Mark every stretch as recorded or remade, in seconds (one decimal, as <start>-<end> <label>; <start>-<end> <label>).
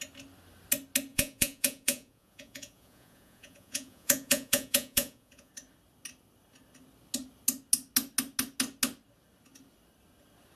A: 0.0-1.1 recorded; 1.1-5.5 remade; 5.5-10.6 recorded